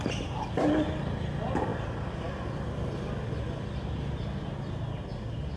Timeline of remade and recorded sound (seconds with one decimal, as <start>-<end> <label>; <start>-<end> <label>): 0.0-5.6 recorded